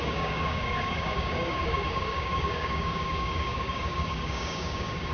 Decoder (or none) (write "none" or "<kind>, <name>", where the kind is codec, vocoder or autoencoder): codec, DAC